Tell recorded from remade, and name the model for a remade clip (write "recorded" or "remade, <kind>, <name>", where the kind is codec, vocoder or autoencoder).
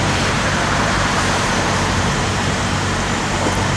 remade, vocoder, BigVGAN v2